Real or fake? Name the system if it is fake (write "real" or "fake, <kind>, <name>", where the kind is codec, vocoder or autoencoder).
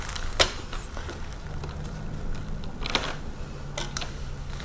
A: real